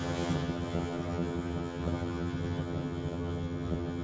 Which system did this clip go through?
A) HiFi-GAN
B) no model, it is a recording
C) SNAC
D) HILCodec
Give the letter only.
A